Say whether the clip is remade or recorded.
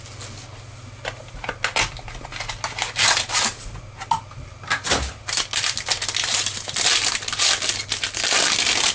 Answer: recorded